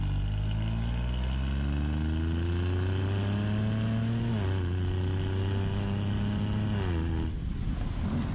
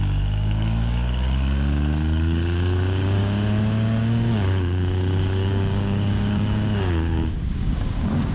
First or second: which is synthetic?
second